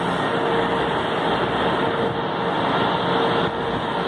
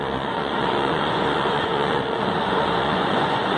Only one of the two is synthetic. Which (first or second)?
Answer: second